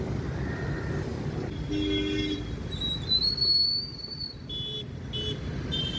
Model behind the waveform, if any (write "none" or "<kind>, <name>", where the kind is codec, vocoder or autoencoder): none